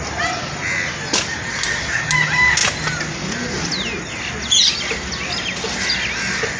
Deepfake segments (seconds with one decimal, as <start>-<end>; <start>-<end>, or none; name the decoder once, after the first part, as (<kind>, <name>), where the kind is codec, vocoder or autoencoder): none